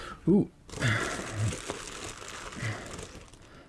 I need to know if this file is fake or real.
real